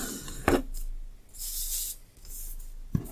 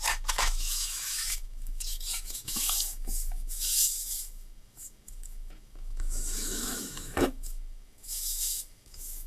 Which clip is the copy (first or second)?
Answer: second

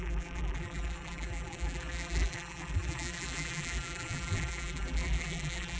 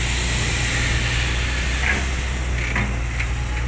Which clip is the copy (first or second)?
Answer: first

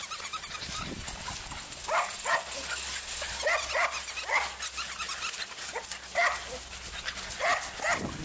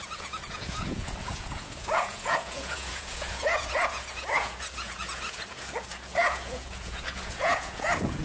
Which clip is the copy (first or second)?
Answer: second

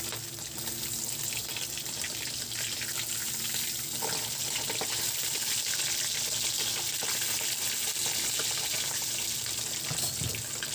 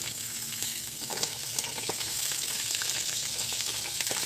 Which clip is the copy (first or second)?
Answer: second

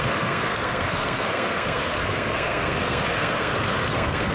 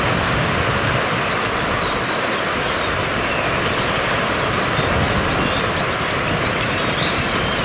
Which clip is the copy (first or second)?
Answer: first